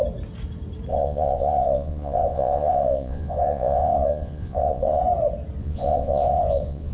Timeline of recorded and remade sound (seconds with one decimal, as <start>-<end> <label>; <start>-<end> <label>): 0.0-0.9 recorded; 0.9-5.0 remade; 5.0-5.6 recorded; 5.6-6.9 remade